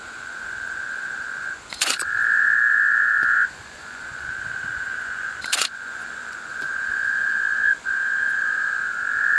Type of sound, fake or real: fake